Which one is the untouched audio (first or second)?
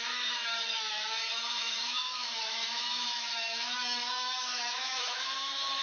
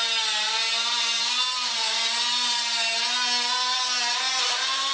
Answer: second